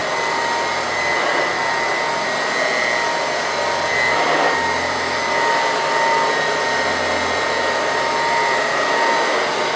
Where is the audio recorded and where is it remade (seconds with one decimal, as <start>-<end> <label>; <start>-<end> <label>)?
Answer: 0.0-9.8 recorded